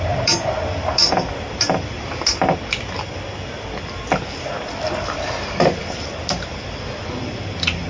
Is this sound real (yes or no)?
yes